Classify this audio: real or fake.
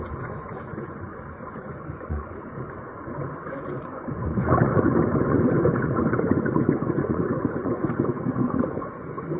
fake